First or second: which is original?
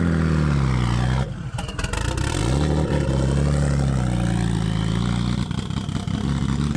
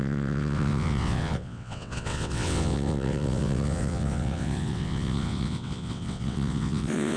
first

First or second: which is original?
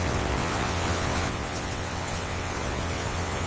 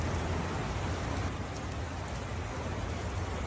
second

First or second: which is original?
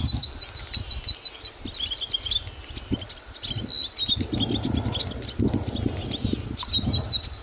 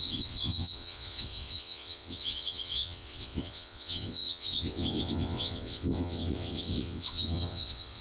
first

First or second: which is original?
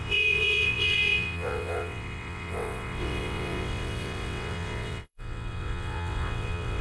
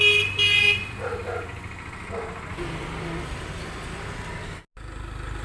second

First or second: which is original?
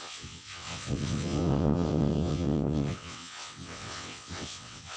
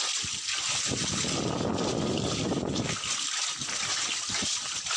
second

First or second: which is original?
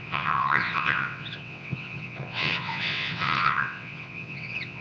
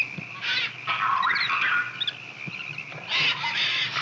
second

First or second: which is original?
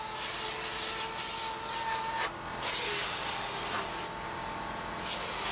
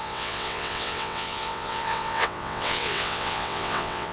first